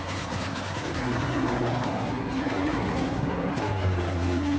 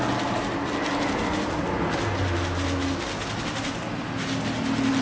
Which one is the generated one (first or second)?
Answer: first